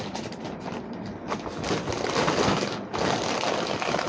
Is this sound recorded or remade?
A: recorded